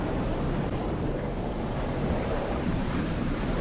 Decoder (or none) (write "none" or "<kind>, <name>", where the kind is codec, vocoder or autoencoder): vocoder, BigVGAN v2